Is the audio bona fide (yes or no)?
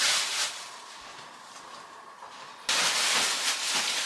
yes